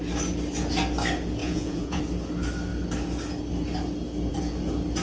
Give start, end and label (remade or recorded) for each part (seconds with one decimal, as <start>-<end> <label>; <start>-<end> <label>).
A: 0.0-1.4 recorded; 1.4-2.0 remade; 2.0-5.0 recorded